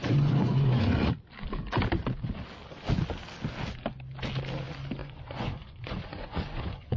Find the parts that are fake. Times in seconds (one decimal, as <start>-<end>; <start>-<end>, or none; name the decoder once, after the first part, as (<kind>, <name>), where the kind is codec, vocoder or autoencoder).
0.0-1.1 (vocoder, Vocos); 5.0-7.0